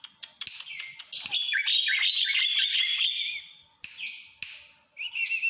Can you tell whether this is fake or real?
real